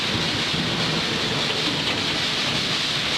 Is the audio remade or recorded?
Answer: recorded